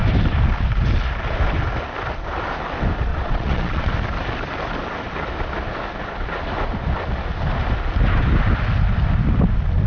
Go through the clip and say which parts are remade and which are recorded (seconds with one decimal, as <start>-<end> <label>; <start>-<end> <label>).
0.0-3.1 recorded; 3.1-3.9 remade; 3.9-9.9 recorded